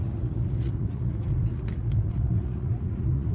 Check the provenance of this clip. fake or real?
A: fake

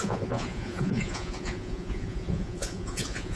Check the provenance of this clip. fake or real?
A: fake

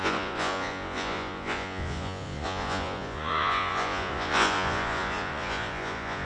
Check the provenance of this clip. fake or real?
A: fake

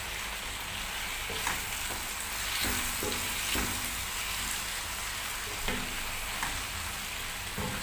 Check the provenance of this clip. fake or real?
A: real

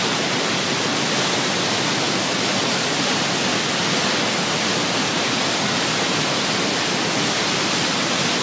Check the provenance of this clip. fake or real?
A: real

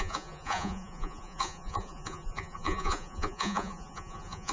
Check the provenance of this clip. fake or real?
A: fake